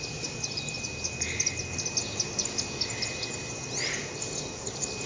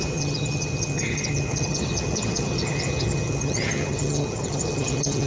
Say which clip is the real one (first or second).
first